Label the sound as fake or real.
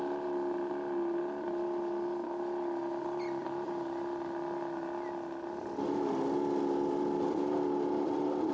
real